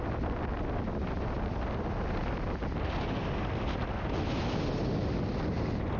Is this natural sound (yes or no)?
yes